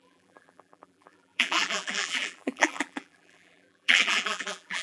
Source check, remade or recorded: remade